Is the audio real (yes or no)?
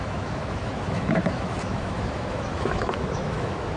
no